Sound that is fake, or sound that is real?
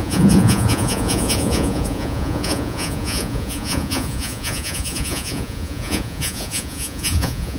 fake